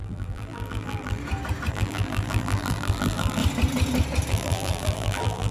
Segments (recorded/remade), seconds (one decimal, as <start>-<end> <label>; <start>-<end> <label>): 0.0-1.2 remade; 1.2-1.7 recorded; 1.7-3.4 remade; 3.4-4.3 recorded; 4.3-5.5 remade